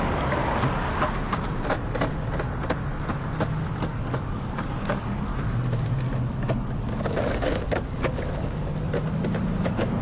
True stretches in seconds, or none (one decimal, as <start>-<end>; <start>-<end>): 0.4-3.9; 5.3-6.8; 8.7-9.6